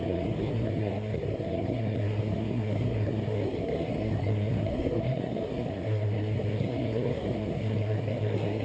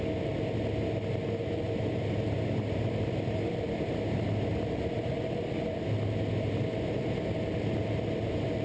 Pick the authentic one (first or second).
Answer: second